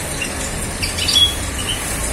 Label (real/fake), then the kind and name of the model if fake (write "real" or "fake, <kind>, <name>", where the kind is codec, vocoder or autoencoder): real